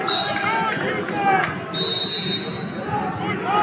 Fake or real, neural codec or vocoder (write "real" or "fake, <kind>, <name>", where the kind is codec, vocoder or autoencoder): real